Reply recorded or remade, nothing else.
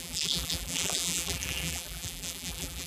remade